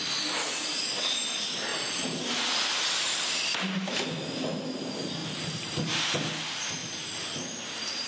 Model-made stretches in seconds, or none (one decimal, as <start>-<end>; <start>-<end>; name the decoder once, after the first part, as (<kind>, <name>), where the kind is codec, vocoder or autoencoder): 1.7-2.4 (vocoder, BigVGAN v2); 5.2-6.0; 6.8-8.1